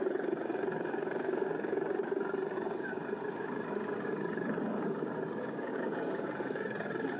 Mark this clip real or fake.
fake